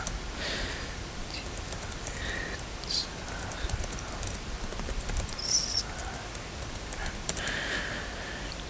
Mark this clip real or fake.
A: fake